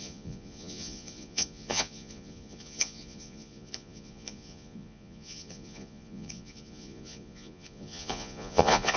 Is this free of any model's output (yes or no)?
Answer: no